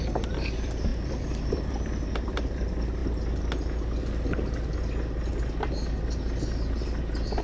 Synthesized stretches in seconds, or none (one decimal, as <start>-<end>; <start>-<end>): 0.0-3.0